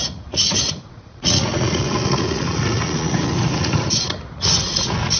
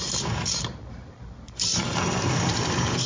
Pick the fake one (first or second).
first